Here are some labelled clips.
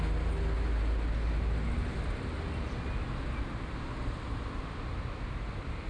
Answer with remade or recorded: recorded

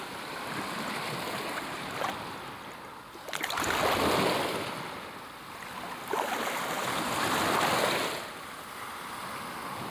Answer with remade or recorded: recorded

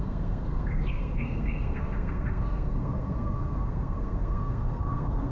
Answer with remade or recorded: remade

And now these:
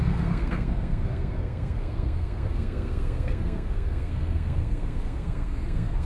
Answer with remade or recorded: remade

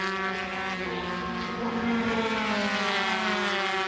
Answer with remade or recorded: recorded